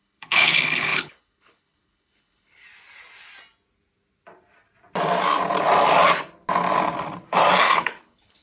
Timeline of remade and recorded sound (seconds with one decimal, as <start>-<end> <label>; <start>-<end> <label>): 0.0-2.6 remade; 2.6-7.6 recorded; 7.6-8.4 remade